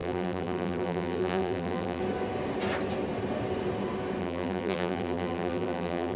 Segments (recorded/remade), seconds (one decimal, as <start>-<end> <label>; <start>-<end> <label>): 0.0-2.0 remade; 2.0-4.2 recorded; 4.2-6.2 remade